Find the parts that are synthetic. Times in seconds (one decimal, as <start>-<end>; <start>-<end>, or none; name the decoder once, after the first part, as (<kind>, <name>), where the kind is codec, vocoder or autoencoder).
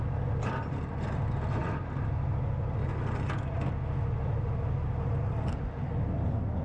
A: 1.6-2.3 (vocoder, BigVGAN v2)